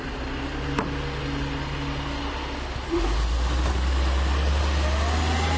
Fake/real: real